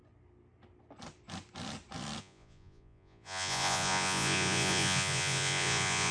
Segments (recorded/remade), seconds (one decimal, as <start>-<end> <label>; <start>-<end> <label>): 0.0-2.2 recorded; 2.2-6.1 remade